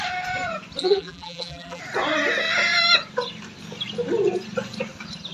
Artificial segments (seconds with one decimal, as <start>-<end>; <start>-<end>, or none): 0.8-1.8